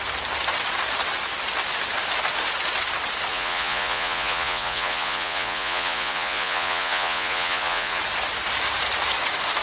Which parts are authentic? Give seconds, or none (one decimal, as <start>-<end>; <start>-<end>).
0.0-3.3; 8.0-9.6